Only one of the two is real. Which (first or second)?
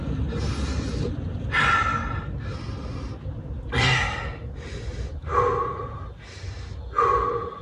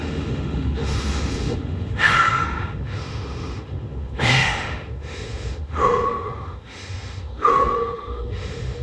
first